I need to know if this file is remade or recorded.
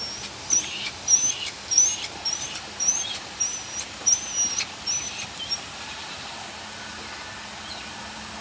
recorded